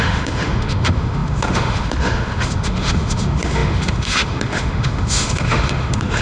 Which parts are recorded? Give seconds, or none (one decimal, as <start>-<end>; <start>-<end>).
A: none